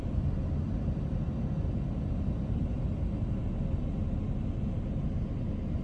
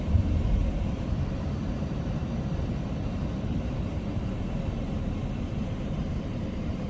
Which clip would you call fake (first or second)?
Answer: second